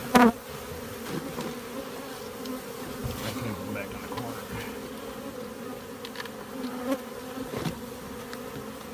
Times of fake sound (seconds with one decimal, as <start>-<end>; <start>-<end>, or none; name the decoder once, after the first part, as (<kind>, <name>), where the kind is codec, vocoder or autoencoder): none